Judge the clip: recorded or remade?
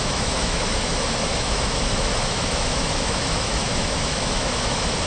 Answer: remade